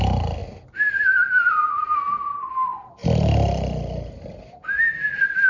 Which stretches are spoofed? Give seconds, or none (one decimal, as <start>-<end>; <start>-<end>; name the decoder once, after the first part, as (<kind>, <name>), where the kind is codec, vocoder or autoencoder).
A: 0.4-1.5 (vocoder, BigVGAN v2)